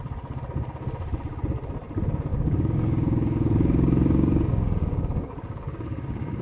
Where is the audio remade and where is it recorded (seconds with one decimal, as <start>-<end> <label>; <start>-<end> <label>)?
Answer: 0.0-2.3 recorded; 2.3-6.4 remade